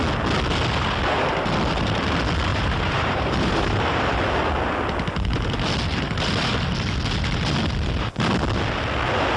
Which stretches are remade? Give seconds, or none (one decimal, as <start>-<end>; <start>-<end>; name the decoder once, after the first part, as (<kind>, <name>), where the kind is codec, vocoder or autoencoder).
2.5-4.2 (vocoder, BigVGAN v2)